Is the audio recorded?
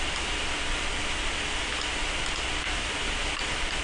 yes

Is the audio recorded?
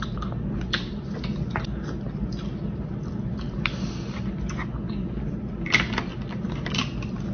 yes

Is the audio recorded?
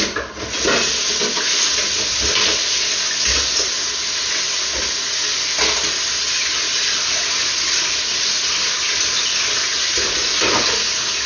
yes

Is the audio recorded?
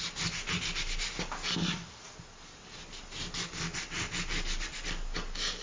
yes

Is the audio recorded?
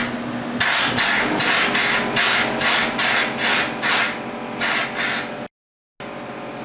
yes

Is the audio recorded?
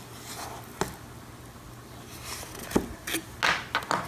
yes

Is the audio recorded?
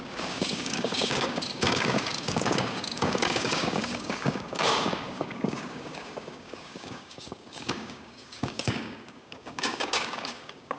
no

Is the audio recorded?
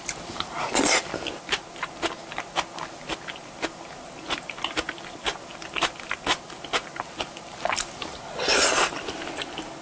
yes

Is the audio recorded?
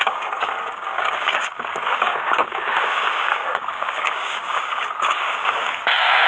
no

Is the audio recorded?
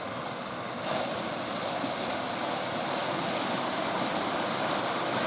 yes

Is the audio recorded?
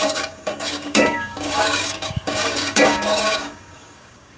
no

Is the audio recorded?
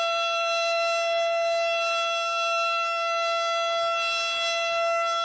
yes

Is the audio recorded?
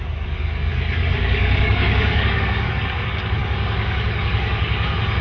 no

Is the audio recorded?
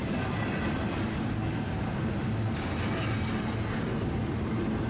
yes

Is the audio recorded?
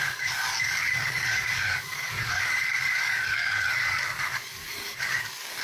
no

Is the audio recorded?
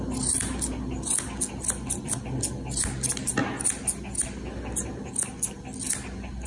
yes